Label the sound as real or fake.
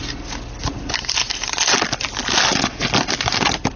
real